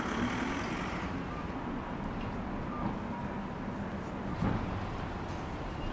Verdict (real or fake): real